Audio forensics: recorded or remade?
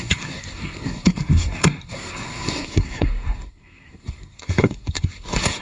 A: remade